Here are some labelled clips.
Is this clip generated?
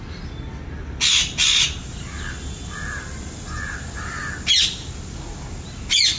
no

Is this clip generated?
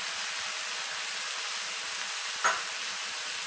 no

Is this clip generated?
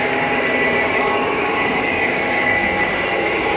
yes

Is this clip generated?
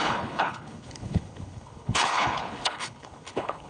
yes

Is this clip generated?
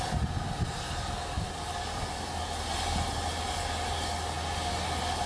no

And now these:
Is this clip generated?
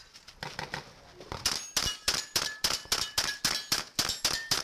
no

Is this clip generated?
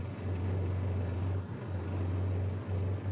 no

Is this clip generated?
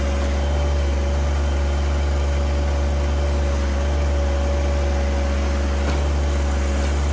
no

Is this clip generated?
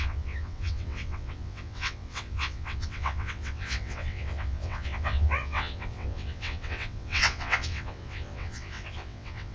yes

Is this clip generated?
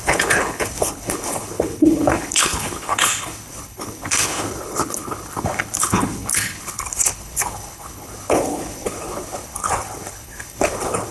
yes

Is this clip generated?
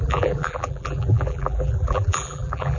yes